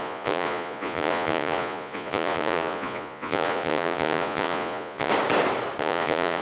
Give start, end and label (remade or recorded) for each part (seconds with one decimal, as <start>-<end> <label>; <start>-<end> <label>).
0.0-5.1 remade; 5.1-5.8 recorded; 5.8-6.4 remade